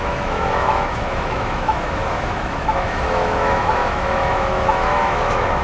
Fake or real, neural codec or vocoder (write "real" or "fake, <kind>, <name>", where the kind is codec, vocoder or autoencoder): fake, autoencoder, DAC-VAE